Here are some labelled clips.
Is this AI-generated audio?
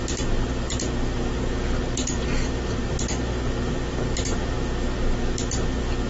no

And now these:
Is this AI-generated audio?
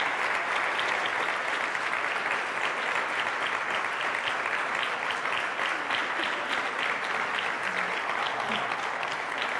no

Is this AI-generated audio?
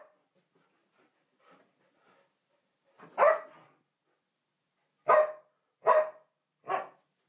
no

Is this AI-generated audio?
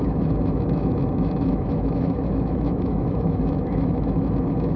yes